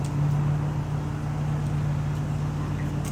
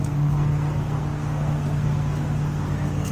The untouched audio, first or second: first